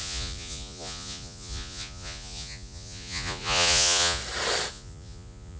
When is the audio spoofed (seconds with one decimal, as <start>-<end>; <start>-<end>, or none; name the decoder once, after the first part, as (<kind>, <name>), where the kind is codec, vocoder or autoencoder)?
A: 0.0-4.2 (vocoder, Vocos); 4.7-5.6